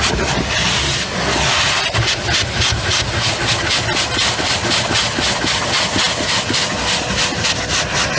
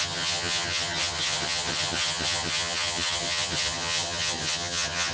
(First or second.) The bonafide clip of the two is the first